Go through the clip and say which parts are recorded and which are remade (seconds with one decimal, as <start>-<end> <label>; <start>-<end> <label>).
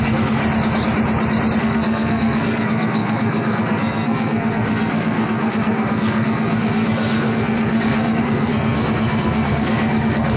0.0-0.4 remade; 0.4-1.6 recorded; 1.6-10.4 remade